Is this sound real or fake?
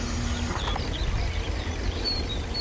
real